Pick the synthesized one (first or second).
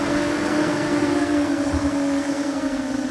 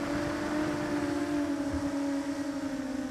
first